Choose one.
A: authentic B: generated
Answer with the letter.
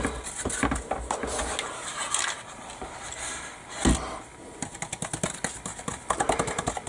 A